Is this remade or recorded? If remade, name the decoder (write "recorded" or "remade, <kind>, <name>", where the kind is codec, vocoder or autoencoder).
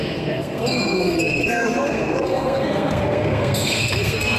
remade, codec, SNAC